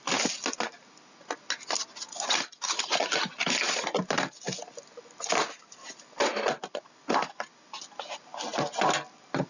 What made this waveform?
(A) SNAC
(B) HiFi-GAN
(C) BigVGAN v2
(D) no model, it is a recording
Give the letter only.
D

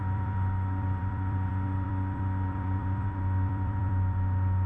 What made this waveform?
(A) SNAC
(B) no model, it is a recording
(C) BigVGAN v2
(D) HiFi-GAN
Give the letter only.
C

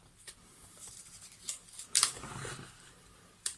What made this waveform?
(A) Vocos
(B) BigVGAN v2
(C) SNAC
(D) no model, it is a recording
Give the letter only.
B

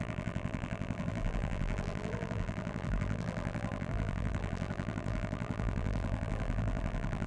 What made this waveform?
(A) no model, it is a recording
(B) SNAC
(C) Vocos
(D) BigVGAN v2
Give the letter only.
D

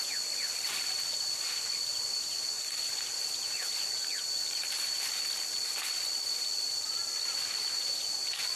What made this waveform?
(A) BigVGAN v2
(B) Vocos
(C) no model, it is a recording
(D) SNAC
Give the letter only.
C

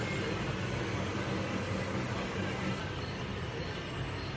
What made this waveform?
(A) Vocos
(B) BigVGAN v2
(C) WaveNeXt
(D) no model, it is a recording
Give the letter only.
D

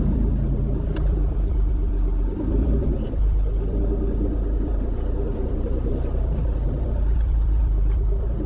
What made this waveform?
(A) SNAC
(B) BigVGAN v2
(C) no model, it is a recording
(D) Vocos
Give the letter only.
B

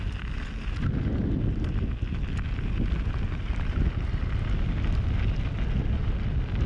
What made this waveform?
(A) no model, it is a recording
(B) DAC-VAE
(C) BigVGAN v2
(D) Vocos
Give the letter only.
A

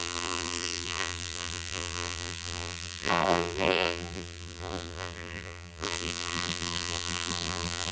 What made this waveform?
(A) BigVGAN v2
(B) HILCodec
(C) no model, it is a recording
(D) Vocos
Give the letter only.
A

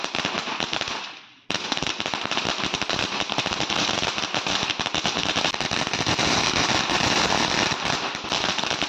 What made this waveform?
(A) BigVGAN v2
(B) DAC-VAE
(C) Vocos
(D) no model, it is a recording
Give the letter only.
A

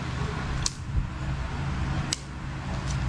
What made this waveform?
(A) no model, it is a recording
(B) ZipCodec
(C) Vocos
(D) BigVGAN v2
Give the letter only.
A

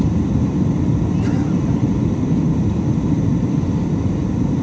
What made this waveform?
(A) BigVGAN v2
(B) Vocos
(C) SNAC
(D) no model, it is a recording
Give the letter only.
A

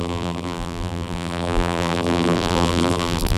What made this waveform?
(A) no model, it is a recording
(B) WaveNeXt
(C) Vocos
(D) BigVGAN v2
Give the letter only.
D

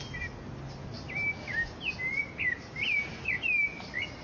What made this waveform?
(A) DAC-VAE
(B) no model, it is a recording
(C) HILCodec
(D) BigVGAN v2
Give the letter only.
B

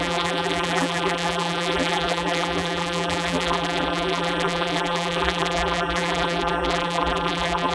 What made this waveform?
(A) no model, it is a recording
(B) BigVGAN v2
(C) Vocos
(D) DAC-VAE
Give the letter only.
B